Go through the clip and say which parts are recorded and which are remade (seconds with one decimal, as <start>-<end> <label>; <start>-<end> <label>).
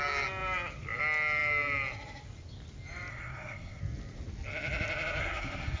0.0-3.1 recorded; 3.1-3.8 remade; 3.8-5.2 recorded; 5.2-5.8 remade